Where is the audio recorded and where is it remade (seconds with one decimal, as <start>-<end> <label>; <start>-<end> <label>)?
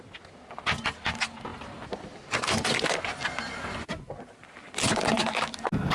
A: 0.0-5.9 recorded